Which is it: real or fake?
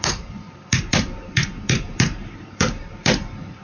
fake